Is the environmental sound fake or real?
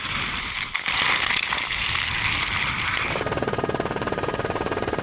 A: real